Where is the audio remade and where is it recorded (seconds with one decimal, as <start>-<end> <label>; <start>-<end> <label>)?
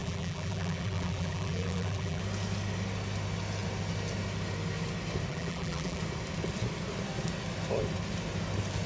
0.0-2.2 remade; 2.2-5.3 recorded; 5.3-6.0 remade; 6.0-8.9 recorded